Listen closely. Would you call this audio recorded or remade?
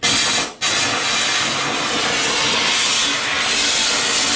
recorded